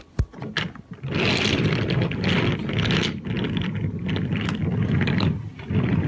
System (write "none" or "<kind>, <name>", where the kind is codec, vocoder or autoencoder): none